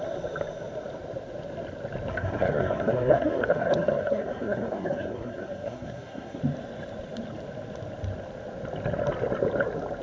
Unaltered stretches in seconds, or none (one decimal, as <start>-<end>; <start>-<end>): 0.0-2.1; 6.4-10.0

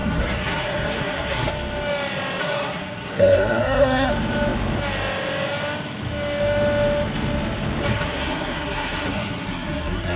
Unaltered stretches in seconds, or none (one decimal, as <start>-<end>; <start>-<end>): 1.5-2.4; 4.1-7.9

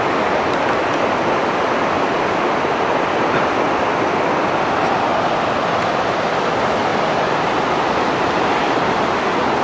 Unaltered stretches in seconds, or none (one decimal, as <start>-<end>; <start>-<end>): 0.0-9.6

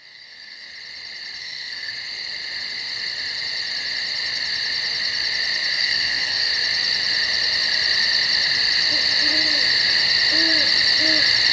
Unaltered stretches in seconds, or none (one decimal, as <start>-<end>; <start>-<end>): 0.7-1.4; 1.9-5.7; 6.5-11.5